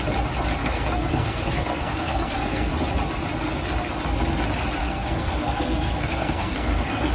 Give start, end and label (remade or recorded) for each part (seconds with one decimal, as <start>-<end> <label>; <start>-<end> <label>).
0.0-0.6 recorded; 0.6-2.7 remade; 2.7-4.8 recorded; 4.8-7.1 remade